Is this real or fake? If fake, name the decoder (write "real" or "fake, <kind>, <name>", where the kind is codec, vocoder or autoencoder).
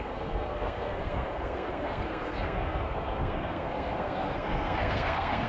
fake, codec, SNAC